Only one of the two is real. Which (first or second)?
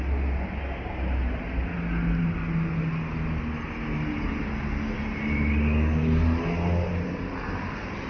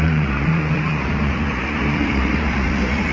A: first